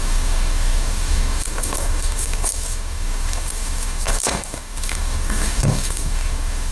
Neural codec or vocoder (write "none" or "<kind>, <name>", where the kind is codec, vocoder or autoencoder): codec, DAC